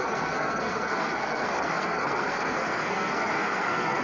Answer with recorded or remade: remade